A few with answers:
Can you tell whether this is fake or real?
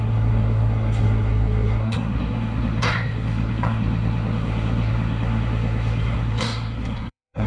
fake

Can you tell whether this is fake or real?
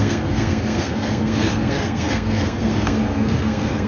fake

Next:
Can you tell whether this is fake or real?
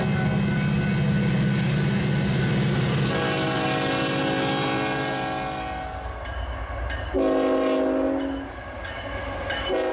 real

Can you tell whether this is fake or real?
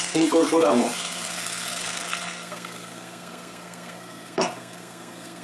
fake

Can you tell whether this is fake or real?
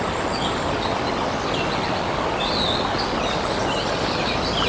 real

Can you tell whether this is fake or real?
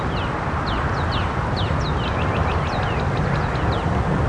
real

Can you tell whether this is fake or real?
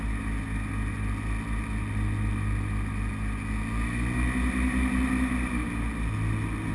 real